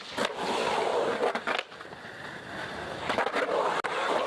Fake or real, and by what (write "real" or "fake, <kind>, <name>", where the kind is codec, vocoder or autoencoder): real